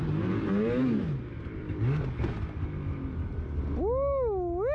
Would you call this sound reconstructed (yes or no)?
no